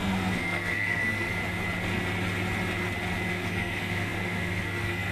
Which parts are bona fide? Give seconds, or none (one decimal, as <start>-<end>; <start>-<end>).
1.4-3.3